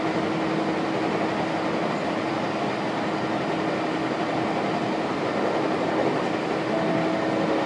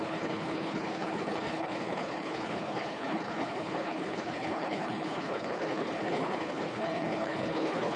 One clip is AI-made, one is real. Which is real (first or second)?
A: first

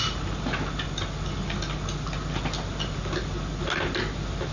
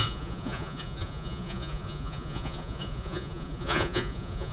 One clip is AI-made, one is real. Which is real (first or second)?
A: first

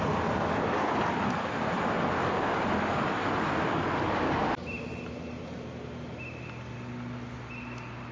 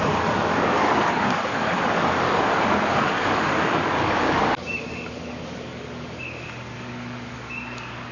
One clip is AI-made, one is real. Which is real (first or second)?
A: first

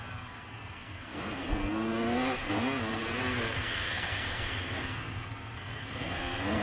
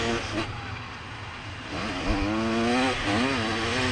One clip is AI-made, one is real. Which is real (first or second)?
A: second